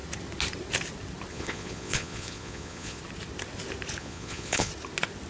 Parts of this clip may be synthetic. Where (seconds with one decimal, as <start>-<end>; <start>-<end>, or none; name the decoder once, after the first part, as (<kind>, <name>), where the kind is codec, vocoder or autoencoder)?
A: 1.3-3.0 (vocoder, Vocos); 4.0-4.7